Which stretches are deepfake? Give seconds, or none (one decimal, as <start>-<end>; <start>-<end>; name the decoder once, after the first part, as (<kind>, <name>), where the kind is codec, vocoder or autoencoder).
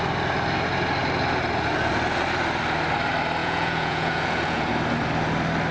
3.4-4.7 (vocoder, Vocos)